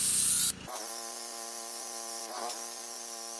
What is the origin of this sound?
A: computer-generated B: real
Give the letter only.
A